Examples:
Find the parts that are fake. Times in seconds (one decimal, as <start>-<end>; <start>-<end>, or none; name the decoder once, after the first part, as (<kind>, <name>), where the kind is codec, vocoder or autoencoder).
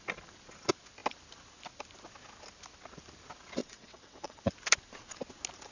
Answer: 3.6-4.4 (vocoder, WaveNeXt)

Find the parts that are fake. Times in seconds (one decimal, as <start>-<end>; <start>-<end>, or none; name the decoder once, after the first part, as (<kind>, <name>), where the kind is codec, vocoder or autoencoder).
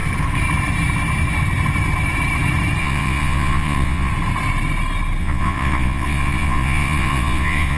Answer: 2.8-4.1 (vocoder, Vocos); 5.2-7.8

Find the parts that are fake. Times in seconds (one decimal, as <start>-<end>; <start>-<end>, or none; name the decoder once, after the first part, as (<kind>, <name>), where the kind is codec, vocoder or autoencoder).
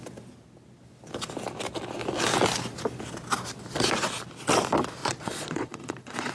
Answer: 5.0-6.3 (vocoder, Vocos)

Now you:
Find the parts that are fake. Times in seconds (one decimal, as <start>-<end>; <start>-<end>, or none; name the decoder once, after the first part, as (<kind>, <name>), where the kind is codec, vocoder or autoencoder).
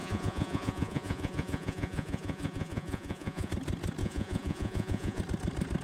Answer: 0.0-3.5 (vocoder, Vocos); 4.0-5.2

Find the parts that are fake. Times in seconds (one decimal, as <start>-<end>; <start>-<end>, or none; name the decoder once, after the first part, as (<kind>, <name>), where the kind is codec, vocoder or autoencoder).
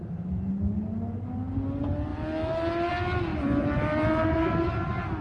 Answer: none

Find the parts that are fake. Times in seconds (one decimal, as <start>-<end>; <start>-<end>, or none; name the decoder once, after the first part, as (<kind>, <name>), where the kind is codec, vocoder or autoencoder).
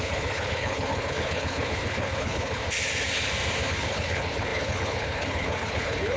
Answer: 0.0-2.6 (codec, HILCodec); 3.7-6.2